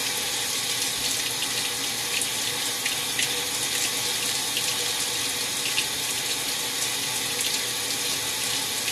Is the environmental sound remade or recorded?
recorded